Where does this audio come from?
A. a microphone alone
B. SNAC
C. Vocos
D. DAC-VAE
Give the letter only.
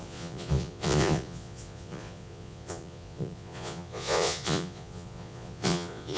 C